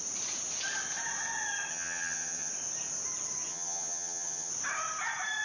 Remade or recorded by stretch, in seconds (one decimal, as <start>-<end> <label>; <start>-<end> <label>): 0.0-1.7 recorded; 1.7-2.5 remade; 2.5-3.5 recorded; 3.5-4.5 remade; 4.5-5.4 recorded